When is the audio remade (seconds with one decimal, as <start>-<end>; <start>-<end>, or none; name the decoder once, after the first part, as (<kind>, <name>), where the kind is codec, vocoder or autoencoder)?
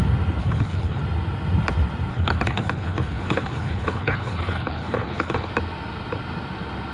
0.4-1.0 (codec, HILCodec); 2.1-5.5